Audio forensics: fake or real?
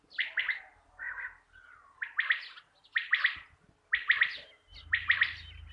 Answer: real